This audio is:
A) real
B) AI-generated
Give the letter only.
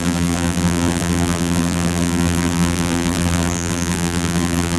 B